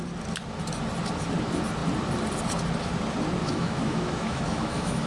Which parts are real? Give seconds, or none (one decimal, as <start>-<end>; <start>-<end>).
0.0-3.4